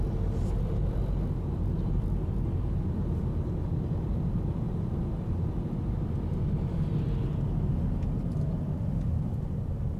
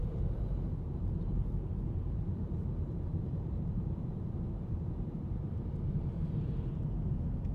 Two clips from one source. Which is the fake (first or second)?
second